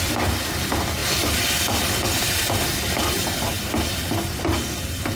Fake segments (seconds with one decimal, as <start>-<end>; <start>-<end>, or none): none